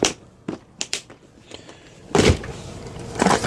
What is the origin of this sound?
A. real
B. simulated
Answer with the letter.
B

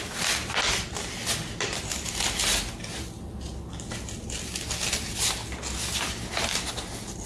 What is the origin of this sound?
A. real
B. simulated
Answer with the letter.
A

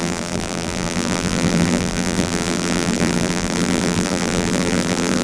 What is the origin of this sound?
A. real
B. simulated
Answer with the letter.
B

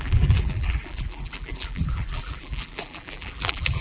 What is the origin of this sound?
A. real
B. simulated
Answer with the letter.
B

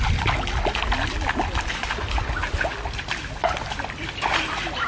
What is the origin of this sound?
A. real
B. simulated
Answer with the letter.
A